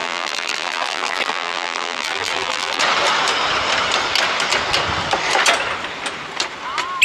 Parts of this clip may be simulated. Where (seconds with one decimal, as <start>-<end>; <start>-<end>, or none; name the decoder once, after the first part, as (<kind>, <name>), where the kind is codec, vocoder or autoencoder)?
0.0-2.8 (vocoder, BigVGAN v2)